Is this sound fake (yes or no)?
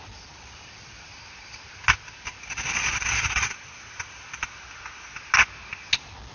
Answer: no